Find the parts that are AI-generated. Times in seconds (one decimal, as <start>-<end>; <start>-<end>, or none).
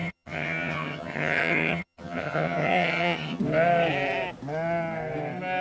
0.0-3.4